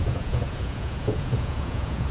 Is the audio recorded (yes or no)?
no